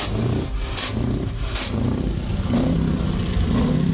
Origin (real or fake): fake